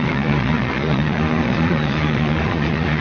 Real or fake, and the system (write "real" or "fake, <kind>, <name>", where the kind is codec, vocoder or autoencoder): fake, vocoder, Vocos